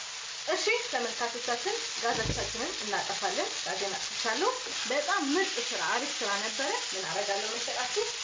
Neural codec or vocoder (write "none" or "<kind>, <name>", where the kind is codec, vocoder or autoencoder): none